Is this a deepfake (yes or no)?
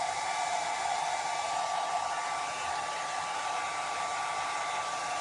no